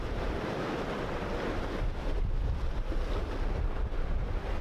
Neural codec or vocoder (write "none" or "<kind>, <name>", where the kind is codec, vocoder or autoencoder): none